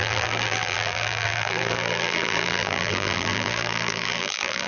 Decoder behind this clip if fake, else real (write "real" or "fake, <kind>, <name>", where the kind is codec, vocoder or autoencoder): fake, vocoder, BigVGAN v2